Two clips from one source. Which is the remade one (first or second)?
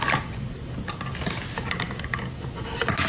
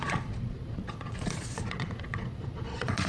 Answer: second